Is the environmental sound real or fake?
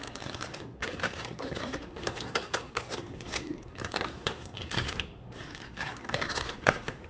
fake